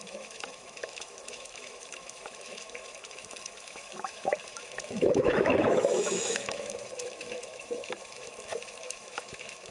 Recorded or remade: remade